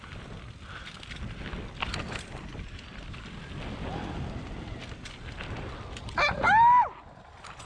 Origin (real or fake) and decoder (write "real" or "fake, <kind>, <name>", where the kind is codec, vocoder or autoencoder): real